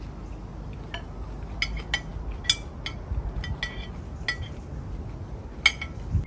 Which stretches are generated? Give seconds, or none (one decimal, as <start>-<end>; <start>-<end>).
none